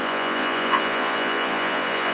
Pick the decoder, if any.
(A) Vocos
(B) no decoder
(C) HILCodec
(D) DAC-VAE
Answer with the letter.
A